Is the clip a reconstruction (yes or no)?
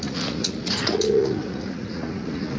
yes